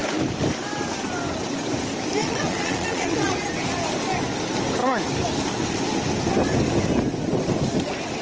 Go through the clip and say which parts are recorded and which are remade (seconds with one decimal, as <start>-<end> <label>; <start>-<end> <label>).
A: 0.0-2.2 recorded; 2.2-3.3 remade; 3.3-8.2 recorded